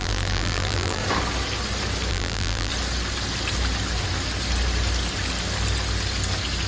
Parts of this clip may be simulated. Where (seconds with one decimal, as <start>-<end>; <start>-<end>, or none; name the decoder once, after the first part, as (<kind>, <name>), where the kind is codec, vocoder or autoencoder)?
0.0-1.0 (vocoder, BigVGAN v2); 2.1-2.7